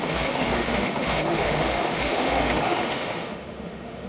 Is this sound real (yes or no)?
no